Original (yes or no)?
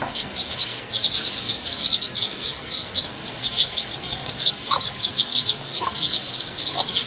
no